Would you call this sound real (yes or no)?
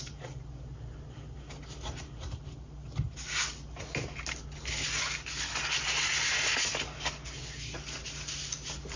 yes